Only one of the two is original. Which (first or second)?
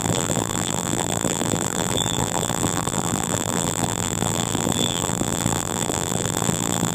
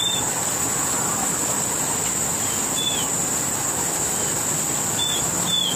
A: second